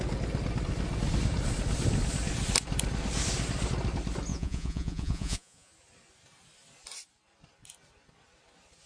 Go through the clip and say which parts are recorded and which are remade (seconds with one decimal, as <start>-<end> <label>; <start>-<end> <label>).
0.0-4.3 recorded; 4.3-5.7 remade; 5.7-8.9 recorded